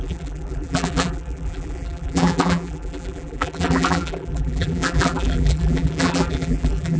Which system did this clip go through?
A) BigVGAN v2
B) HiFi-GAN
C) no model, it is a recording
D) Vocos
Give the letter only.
A